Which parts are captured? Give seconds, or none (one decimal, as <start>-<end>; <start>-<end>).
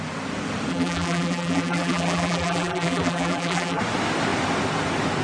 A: 0.0-0.7; 3.8-5.2